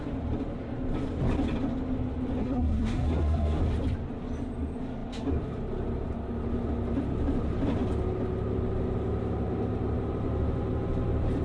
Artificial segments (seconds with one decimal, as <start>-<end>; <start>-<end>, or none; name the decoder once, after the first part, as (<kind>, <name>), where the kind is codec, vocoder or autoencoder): 2.4-3.6 (codec, SNAC)